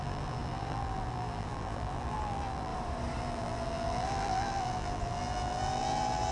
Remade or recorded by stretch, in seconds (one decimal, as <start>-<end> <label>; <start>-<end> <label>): 0.0-2.7 remade; 2.7-3.2 recorded; 3.2-6.3 remade